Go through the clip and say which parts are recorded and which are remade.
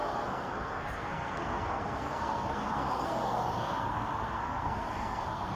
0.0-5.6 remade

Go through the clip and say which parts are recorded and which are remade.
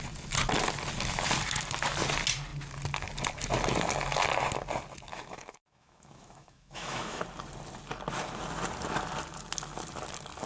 0.0-5.1 recorded; 5.1-7.2 remade; 7.2-10.5 recorded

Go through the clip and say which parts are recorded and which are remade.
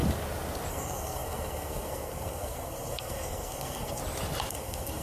0.0-0.7 recorded; 0.7-4.0 remade; 4.0-4.5 recorded; 4.5-5.0 remade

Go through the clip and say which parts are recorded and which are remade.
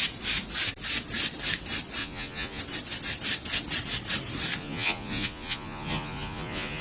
0.0-2.0 recorded; 2.0-2.6 remade; 2.6-4.6 recorded; 4.6-6.8 remade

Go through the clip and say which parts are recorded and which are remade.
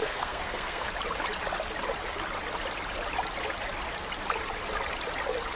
0.0-0.9 remade; 0.9-5.6 recorded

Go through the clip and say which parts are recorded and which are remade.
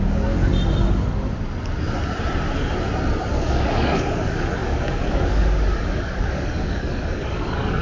0.0-0.5 remade; 0.5-3.4 recorded; 3.4-7.8 remade